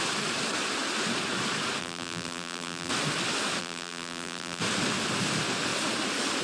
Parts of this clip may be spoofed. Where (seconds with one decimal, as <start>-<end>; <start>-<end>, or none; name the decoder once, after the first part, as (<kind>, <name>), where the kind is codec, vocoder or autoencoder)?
1.8-2.9 (vocoder, BigVGAN v2); 3.6-4.6